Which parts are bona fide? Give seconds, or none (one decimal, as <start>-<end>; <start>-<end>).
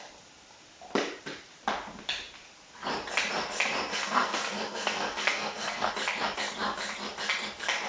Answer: 0.0-3.9; 5.9-7.9